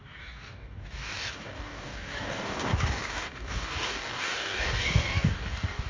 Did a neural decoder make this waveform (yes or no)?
yes